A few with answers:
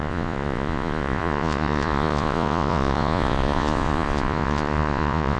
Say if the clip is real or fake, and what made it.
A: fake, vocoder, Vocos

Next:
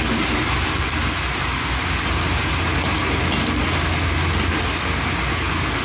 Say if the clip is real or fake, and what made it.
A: real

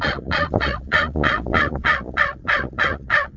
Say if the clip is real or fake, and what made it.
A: fake, vocoder, Vocos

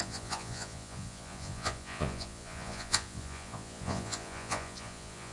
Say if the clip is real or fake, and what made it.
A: fake, vocoder, Vocos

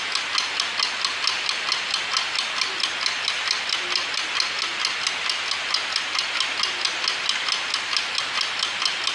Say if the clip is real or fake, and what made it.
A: real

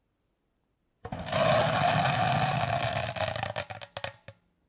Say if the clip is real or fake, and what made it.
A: real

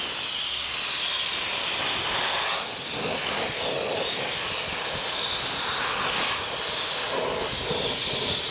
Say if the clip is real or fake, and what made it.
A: real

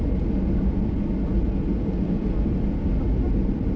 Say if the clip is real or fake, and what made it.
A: real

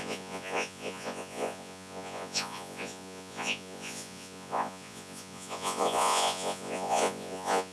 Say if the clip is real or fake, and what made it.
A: fake, vocoder, Vocos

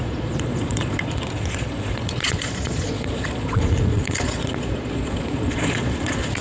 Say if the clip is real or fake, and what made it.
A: fake, vocoder, Vocos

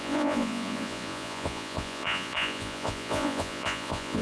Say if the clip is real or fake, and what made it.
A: fake, vocoder, Vocos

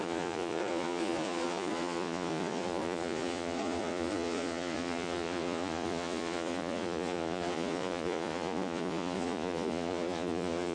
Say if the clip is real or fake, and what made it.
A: fake, vocoder, Vocos